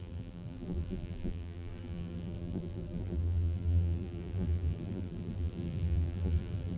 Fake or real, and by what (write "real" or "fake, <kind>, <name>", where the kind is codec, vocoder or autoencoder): fake, vocoder, BigVGAN v2